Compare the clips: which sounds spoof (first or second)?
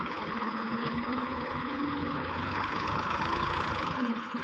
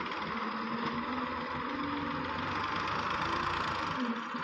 first